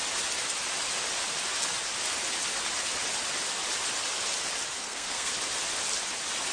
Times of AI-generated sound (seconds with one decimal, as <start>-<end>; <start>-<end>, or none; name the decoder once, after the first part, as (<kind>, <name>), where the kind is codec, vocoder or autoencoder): 4.8-5.3 (codec, SNAC)